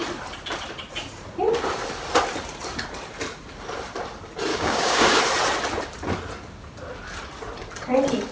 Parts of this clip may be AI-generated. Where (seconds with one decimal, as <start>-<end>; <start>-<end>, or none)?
4.5-5.2